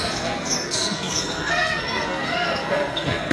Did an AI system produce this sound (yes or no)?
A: yes